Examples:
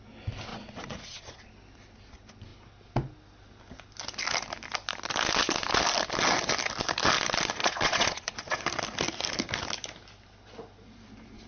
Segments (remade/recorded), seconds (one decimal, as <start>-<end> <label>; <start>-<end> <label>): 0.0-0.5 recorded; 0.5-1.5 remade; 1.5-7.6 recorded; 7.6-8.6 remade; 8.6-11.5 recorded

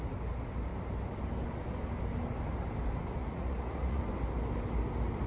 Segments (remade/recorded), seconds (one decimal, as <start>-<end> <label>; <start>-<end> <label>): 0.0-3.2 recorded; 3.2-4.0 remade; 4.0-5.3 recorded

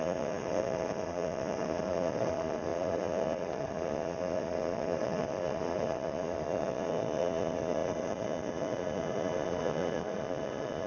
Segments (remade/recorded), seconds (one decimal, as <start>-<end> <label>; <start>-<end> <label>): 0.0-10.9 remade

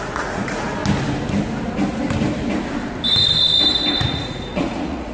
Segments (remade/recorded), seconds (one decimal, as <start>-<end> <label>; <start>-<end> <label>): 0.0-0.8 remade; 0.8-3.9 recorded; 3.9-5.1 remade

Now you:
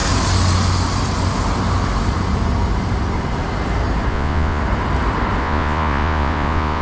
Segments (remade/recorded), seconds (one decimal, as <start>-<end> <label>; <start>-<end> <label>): 0.0-4.1 recorded; 4.1-4.6 remade; 4.6-5.4 recorded; 5.4-6.8 remade

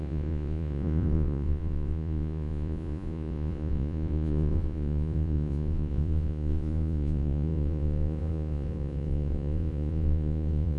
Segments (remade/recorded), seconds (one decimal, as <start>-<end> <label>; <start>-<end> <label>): 0.0-10.8 remade

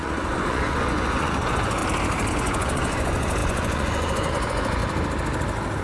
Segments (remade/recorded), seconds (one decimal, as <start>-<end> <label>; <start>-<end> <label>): 0.0-1.8 remade; 1.8-2.3 recorded; 2.3-4.8 remade; 4.8-5.8 recorded